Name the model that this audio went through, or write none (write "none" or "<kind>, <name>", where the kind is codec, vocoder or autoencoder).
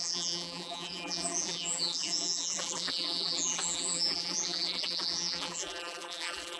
vocoder, BigVGAN v2